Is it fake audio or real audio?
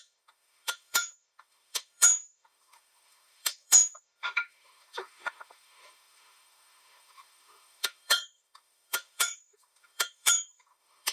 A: fake